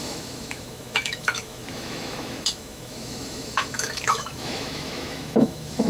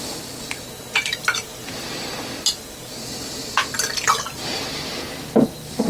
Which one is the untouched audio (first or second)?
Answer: second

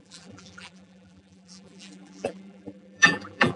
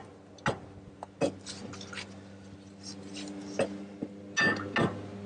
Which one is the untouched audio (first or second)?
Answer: second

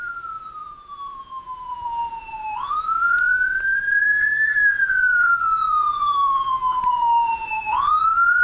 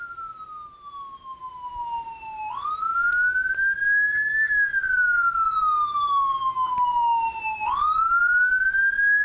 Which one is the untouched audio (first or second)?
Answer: second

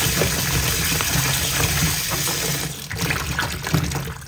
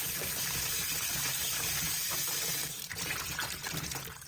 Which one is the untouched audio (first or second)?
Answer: first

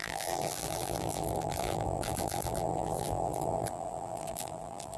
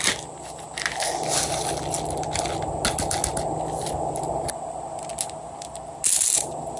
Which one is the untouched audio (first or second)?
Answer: second